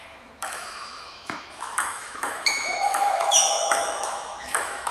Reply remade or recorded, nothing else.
remade